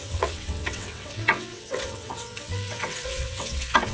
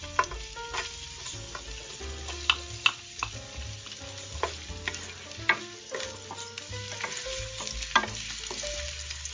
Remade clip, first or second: first